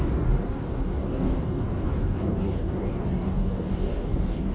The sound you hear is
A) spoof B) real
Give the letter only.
A